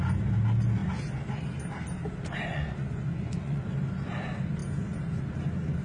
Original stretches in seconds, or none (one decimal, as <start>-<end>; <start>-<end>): 0.0-2.5; 3.6-5.8